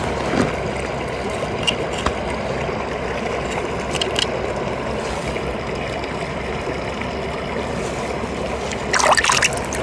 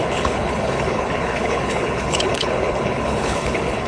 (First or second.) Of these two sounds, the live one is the first